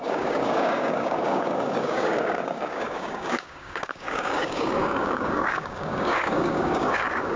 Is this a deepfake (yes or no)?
yes